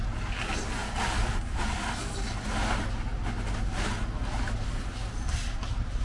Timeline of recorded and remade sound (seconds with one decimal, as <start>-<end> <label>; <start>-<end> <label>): 0.0-6.0 recorded